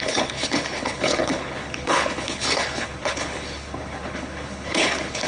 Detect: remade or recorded remade